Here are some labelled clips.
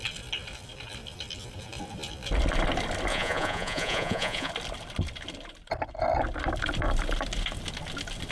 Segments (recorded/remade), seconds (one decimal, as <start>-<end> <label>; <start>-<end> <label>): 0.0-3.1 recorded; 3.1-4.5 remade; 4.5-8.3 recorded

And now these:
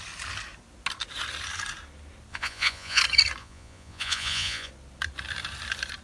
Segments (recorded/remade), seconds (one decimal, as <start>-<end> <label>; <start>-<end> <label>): 0.0-2.3 recorded; 2.3-3.0 remade; 3.0-3.4 recorded; 3.4-4.7 remade; 4.7-6.0 recorded

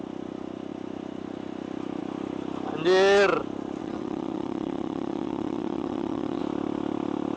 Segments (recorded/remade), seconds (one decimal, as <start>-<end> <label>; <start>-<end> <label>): 0.0-3.8 recorded; 3.8-6.4 remade; 6.4-7.4 recorded

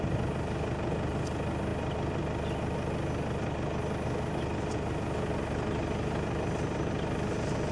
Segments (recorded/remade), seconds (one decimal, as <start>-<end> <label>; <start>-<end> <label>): 0.0-7.7 recorded

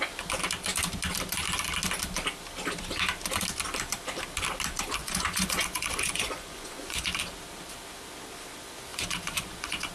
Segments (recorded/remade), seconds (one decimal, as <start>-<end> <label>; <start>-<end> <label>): 0.0-5.0 recorded; 5.0-7.1 remade; 7.1-8.9 recorded; 8.9-9.9 remade

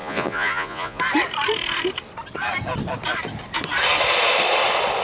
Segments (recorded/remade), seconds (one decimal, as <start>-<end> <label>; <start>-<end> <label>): 0.0-1.0 remade; 1.0-5.0 recorded

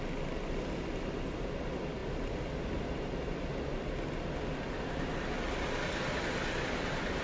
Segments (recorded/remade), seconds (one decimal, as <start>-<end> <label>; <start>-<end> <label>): 0.0-7.2 recorded

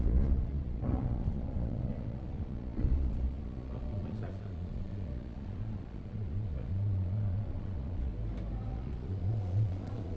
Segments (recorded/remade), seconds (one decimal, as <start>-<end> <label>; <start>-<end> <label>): 0.0-8.1 remade; 8.1-8.7 recorded; 8.7-10.2 remade